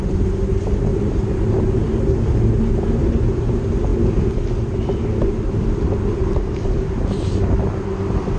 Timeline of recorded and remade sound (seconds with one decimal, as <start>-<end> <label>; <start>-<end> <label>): 0.0-8.4 recorded